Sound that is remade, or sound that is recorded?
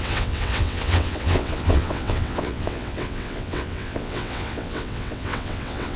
remade